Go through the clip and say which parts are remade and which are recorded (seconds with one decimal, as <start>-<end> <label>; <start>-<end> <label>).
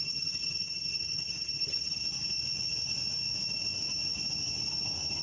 0.0-2.0 remade; 2.0-5.2 recorded